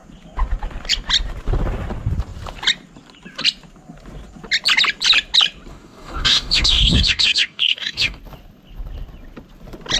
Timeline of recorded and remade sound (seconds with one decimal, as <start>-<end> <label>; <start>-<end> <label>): 0.0-5.7 recorded; 5.7-8.2 remade; 8.2-10.0 recorded